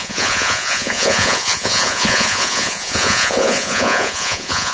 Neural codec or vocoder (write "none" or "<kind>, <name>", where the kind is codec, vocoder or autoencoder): vocoder, Vocos